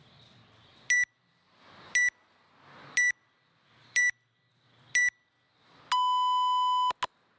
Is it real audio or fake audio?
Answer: real